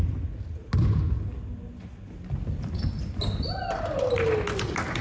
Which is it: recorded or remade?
recorded